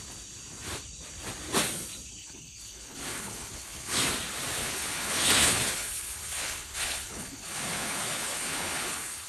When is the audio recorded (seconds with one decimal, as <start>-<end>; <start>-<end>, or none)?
0.0-2.2; 4.1-4.6